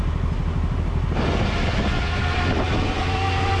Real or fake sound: real